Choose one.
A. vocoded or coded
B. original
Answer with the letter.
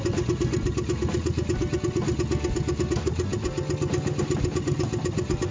B